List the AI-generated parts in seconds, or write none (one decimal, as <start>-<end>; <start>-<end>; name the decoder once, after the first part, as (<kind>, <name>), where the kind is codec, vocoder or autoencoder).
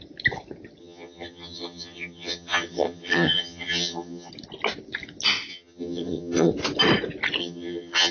0.8-4.3 (vocoder, HiFi-GAN); 5.5-6.5; 7.4-8.1